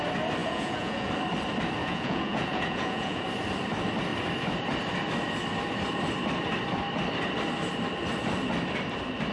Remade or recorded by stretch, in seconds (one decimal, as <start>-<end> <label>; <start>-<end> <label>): 0.0-0.4 recorded; 0.4-1.1 remade; 1.1-1.8 recorded; 1.8-3.2 remade; 3.2-9.3 recorded